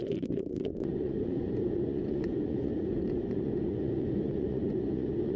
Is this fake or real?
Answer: fake